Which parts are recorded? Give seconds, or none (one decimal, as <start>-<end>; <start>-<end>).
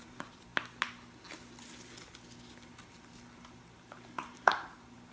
0.5-3.6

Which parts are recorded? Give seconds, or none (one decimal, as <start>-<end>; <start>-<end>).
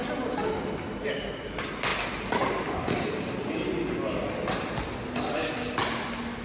0.0-6.4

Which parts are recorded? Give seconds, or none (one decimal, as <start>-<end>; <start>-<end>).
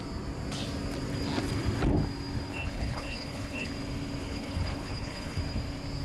0.0-2.5; 3.7-4.2; 5.4-6.0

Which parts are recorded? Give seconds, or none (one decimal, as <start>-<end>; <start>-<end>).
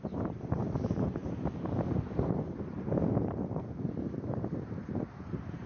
none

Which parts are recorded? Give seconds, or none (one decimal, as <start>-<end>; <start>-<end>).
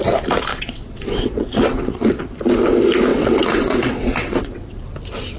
0.0-0.5; 2.2-3.1; 4.8-5.4